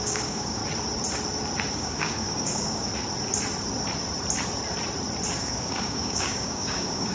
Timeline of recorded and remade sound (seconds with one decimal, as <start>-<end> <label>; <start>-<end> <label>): 0.0-0.6 remade; 0.6-1.7 recorded; 1.7-2.9 remade; 2.9-5.4 recorded; 5.4-7.1 remade